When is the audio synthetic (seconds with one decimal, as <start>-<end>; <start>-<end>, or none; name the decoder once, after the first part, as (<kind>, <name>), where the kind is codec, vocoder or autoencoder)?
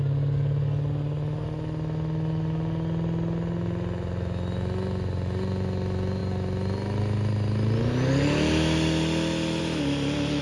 none